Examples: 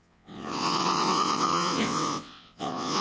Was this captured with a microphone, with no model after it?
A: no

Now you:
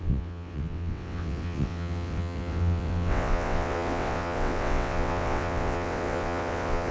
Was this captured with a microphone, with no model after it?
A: no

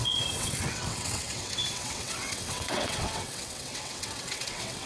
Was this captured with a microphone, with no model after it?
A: no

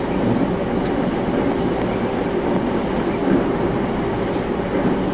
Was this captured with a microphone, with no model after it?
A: yes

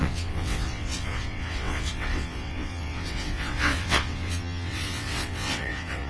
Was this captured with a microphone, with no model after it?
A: no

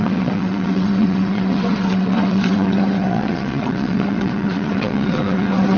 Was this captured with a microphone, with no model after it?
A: no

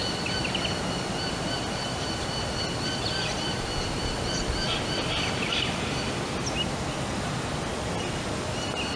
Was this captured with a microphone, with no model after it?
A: yes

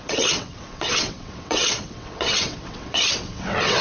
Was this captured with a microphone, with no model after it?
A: no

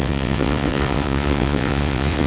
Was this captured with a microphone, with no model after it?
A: no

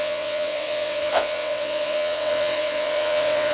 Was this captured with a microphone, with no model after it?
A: no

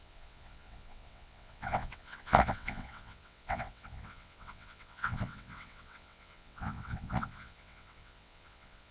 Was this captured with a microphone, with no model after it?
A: no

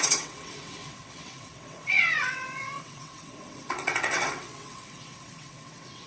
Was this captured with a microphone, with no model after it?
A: no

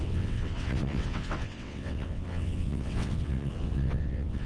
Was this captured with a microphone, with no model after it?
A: no